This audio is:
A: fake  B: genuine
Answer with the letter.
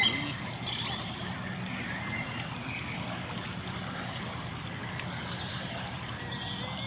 B